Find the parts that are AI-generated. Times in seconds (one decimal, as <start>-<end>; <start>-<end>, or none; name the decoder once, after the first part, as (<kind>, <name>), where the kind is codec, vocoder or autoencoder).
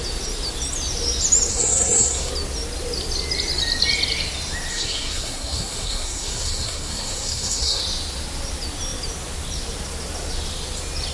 1.5-2.3 (codec, SNAC); 4.7-7.8